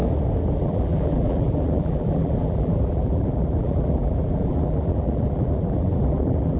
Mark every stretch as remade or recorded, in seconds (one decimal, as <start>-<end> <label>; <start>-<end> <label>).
0.0-0.6 recorded; 0.6-6.6 remade